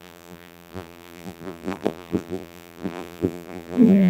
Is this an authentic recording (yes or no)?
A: no